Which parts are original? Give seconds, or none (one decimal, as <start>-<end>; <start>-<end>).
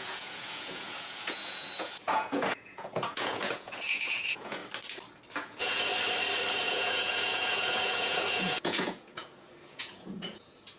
4.6-5.4; 5.9-6.5